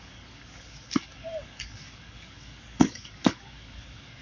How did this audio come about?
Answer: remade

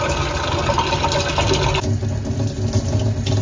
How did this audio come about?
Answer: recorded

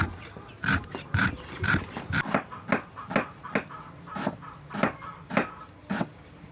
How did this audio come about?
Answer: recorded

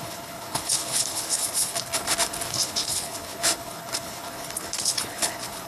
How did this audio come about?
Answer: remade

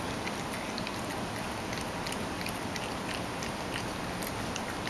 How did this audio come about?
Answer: recorded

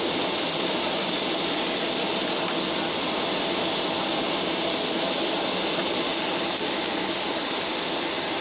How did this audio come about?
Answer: recorded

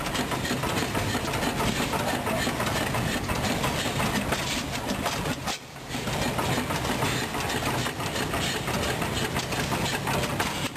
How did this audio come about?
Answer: recorded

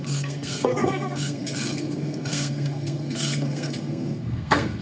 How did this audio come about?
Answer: remade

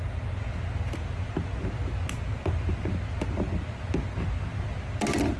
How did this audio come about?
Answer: recorded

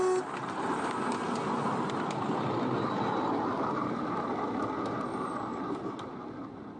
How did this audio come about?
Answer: recorded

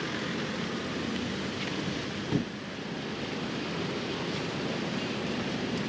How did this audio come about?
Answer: recorded